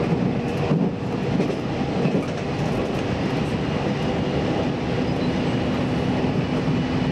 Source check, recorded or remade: recorded